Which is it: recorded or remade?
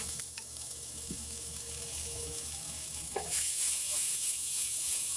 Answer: remade